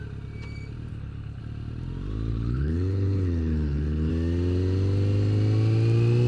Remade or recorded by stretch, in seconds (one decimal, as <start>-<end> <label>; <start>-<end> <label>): 0.0-0.9 recorded; 0.9-1.4 remade; 1.4-2.3 recorded; 2.3-4.1 remade; 4.1-6.3 recorded